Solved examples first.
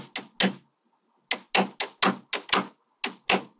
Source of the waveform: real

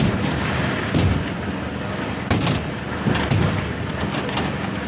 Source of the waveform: real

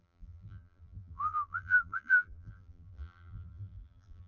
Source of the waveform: fake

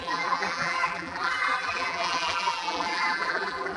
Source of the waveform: fake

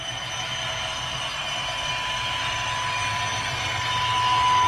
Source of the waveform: real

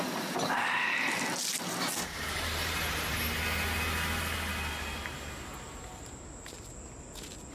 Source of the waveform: real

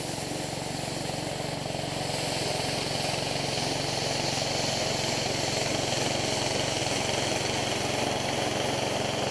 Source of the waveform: real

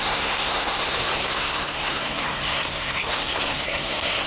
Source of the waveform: fake